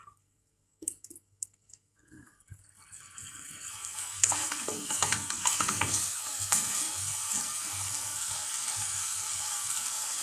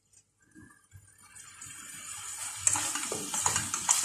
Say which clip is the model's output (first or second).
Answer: first